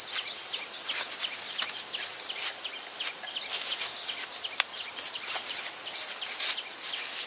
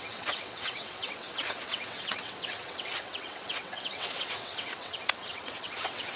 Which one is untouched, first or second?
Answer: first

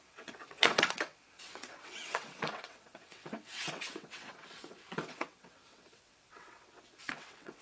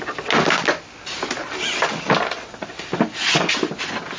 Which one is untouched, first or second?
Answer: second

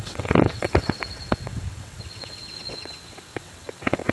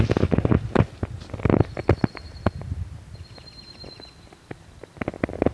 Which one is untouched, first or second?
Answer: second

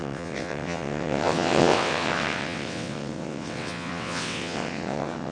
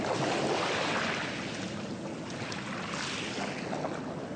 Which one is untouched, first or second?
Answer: second